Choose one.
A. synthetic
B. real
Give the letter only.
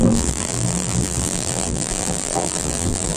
A